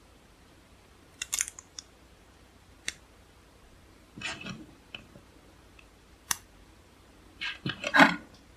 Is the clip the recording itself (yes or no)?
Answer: no